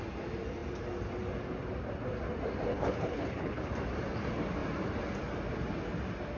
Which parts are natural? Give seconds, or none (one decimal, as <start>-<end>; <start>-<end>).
0.0-2.7; 3.7-6.4